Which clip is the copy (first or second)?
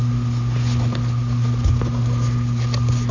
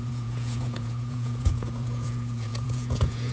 second